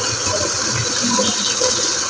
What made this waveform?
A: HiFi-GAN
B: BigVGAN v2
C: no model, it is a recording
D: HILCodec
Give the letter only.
C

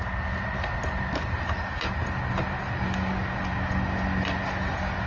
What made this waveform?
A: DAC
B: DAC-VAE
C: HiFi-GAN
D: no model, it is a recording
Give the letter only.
D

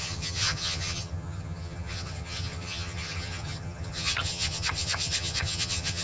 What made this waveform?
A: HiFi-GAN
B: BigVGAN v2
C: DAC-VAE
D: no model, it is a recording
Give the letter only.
A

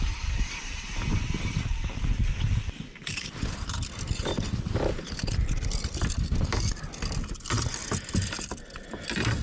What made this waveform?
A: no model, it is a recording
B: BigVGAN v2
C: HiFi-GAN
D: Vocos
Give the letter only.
A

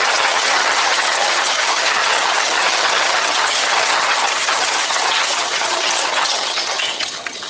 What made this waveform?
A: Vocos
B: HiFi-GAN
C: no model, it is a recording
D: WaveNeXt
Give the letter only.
B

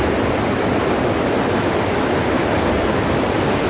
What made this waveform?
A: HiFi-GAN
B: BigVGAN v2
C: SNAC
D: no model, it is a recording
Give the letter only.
D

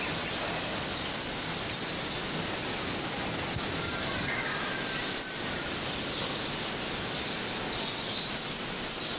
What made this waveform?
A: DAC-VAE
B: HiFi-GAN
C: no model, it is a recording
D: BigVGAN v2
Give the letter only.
C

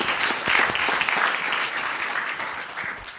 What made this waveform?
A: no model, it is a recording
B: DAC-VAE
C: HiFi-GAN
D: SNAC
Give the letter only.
A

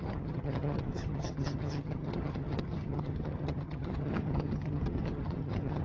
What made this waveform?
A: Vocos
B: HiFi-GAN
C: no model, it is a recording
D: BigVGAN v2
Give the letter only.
B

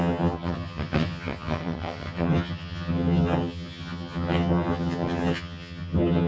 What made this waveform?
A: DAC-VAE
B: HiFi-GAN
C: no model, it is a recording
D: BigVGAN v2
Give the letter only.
B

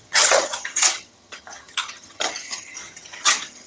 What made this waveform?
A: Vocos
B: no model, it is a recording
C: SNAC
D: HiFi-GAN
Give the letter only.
D